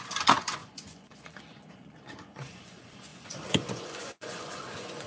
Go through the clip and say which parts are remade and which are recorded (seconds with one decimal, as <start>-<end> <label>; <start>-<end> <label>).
0.0-5.1 remade